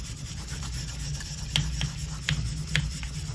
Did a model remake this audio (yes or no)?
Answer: no